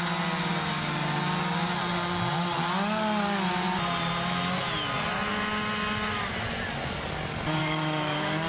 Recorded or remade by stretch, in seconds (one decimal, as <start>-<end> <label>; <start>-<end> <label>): 0.0-7.6 recorded; 7.6-8.5 remade